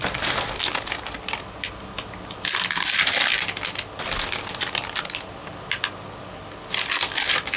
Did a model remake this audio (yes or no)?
no